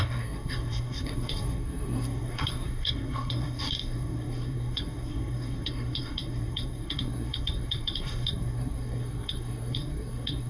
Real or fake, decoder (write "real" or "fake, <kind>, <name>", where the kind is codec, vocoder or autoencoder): fake, codec, SNAC